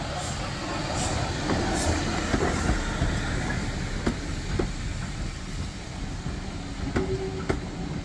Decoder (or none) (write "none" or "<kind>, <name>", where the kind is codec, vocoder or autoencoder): none